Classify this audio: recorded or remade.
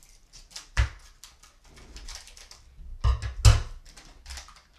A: recorded